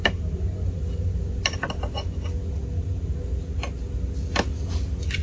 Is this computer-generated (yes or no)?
no